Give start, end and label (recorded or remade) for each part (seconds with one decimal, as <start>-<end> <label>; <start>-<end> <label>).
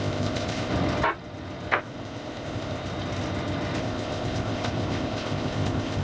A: 0.0-0.7 remade; 0.7-1.7 recorded; 1.7-2.8 remade; 2.8-3.8 recorded; 3.8-6.0 remade